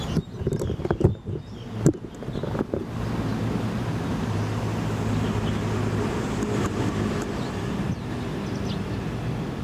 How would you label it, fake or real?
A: real